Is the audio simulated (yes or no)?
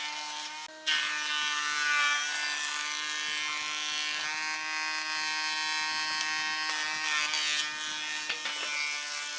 no